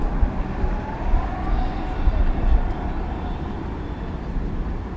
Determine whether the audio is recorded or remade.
recorded